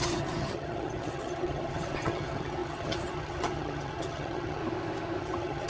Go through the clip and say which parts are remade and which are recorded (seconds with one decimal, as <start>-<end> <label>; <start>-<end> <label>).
0.0-4.6 remade; 4.6-5.2 recorded; 5.2-5.7 remade